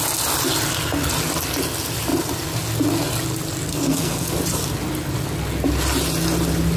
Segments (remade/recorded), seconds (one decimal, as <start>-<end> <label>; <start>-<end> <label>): 0.0-3.7 recorded; 3.7-4.3 remade; 4.3-6.8 recorded